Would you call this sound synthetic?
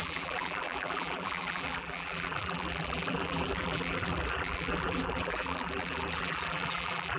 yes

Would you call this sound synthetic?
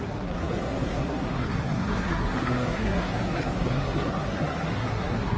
yes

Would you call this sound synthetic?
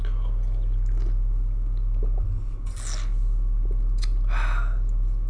no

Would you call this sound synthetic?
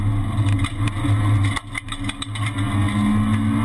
no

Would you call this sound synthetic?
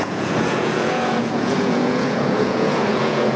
yes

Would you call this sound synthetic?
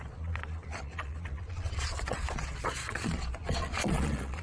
yes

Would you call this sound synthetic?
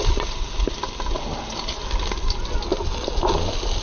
no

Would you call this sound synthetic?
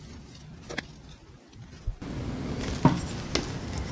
no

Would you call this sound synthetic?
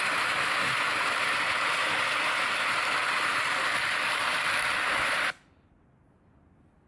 no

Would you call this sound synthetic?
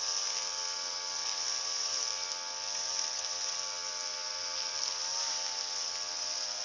no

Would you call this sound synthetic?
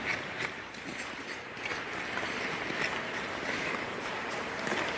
yes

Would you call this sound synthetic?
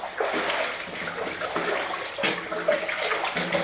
no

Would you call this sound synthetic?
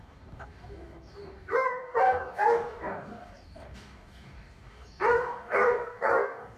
yes